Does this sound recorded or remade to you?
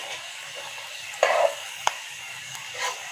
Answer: remade